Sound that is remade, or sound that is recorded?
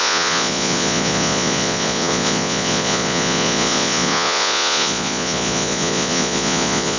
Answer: remade